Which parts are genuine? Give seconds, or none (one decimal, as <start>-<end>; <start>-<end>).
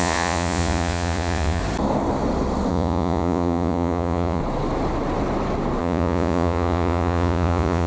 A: 1.6-2.7; 4.4-5.8